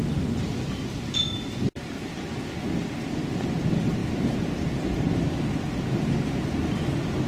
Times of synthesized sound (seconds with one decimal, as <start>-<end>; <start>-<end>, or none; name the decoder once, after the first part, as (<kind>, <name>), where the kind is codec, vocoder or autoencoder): 1.2-2.2 (vocoder, BigVGAN v2); 4.0-6.0; 6.6-7.3

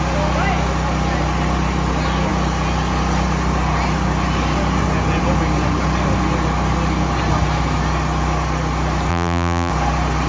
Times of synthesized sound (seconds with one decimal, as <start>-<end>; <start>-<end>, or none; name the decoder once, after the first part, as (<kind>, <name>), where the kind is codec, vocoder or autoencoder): 9.1-9.7 (vocoder, BigVGAN v2)

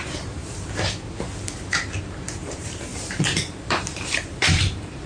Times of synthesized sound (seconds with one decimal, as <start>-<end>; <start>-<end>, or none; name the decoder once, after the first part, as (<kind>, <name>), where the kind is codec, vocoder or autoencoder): 0.0-0.4 (vocoder, BigVGAN v2); 2.0-5.1

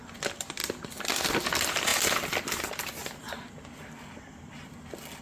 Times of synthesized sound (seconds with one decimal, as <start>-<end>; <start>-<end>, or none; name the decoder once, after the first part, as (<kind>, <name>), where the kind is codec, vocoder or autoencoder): none

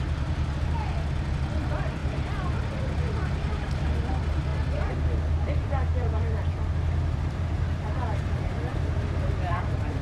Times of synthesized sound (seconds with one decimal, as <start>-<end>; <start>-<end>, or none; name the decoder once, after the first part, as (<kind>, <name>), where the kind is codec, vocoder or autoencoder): 0.0-4.5 (vocoder, BigVGAN v2); 5.3-10.0

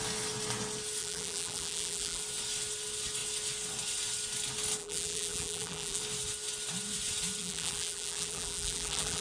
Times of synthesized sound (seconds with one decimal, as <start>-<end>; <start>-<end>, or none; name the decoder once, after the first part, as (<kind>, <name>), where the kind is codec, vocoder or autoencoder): 1.0-2.2 (vocoder, BigVGAN v2); 4.8-6.0; 7.4-9.2

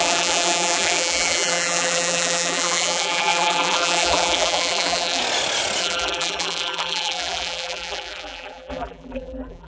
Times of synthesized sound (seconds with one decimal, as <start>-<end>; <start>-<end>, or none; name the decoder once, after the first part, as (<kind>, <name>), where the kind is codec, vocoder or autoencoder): 0.0-5.2 (vocoder, BigVGAN v2); 5.8-9.7

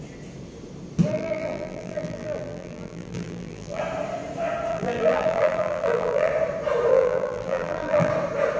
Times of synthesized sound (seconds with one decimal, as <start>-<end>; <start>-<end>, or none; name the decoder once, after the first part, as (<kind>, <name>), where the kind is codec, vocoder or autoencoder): 1.1-3.8 (vocoder, BigVGAN v2); 4.7-6.3; 6.9-8.1